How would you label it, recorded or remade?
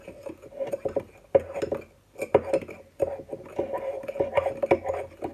recorded